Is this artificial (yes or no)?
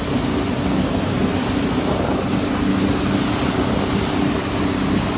no